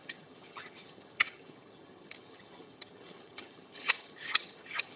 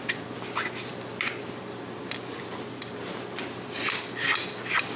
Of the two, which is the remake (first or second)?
first